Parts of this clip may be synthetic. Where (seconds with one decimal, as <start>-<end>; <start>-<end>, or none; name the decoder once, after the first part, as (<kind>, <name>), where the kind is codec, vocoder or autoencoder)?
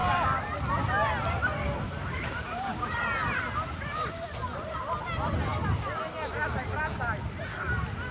2.0-3.0 (codec, DAC)